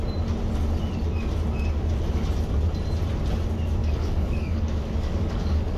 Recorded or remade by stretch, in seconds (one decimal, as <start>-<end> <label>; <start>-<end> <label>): 0.0-3.8 recorded; 3.8-5.8 remade